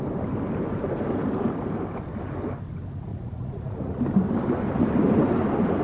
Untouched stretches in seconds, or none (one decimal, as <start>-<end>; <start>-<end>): 0.0-3.1; 4.0-5.8